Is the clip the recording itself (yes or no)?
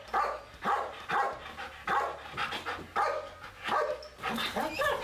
yes